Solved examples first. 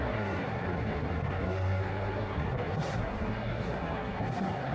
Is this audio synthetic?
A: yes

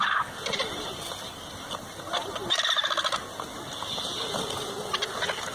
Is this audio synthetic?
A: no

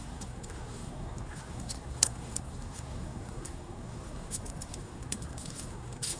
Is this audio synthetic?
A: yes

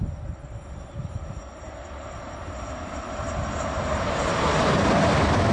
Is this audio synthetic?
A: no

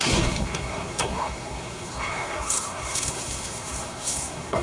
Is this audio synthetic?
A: yes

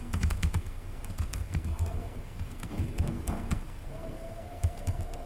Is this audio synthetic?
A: yes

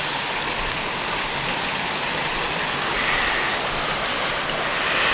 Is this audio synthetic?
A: no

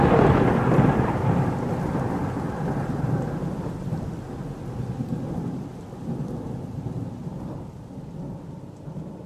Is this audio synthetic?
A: no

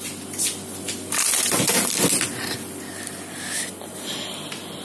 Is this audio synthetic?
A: no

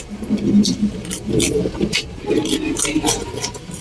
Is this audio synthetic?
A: no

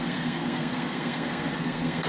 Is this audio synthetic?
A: yes